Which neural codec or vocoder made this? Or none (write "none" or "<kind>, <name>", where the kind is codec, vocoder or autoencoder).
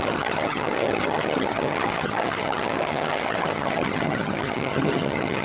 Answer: vocoder, HiFi-GAN